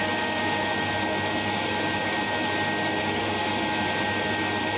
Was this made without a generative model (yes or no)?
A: yes